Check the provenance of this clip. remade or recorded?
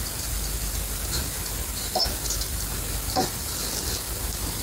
recorded